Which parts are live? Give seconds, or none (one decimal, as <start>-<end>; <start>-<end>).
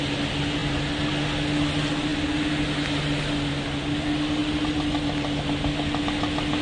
0.0-6.6